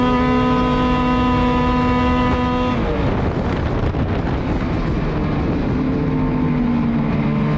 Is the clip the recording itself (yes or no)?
yes